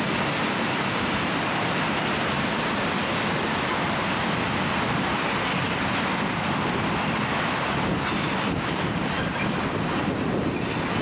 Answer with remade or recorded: recorded